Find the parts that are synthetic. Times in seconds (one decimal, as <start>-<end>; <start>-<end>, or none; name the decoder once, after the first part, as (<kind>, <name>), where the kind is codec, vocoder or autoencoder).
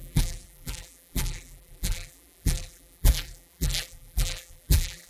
0.0-5.1 (vocoder, BigVGAN v2)